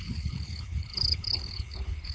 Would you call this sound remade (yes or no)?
yes